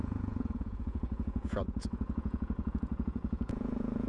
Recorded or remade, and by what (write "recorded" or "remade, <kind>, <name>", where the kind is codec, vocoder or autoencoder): remade, vocoder, Vocos